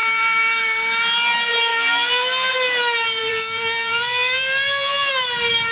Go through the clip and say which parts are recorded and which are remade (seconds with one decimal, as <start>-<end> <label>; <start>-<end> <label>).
0.0-1.7 recorded; 1.7-2.5 remade; 2.5-3.2 recorded; 3.2-5.1 remade; 5.1-5.7 recorded